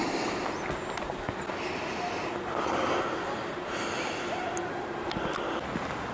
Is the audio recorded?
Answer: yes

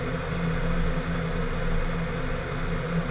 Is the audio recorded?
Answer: yes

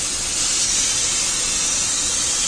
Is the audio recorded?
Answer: yes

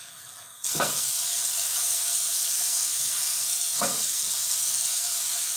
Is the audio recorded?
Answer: no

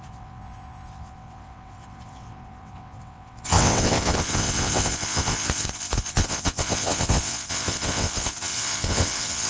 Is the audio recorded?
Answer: no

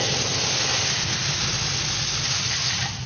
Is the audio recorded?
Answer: yes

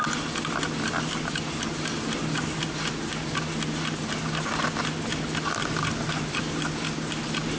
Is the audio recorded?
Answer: yes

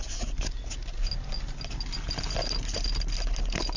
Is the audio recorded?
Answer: yes